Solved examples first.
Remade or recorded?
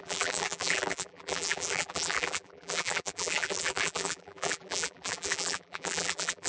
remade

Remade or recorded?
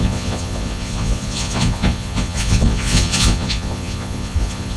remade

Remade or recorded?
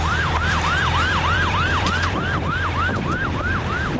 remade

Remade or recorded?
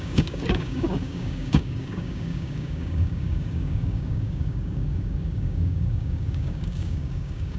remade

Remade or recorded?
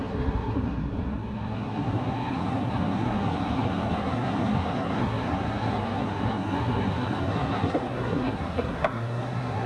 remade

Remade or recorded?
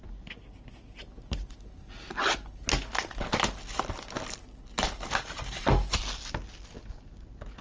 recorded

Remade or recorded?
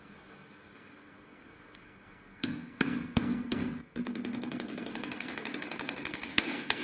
remade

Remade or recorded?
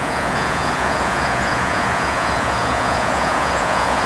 remade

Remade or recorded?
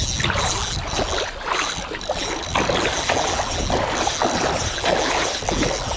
recorded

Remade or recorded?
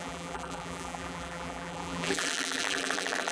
remade